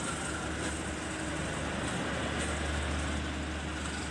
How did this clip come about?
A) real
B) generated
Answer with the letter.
A